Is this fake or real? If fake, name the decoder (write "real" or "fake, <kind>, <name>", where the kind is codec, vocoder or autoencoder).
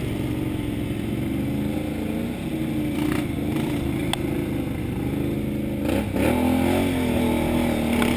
real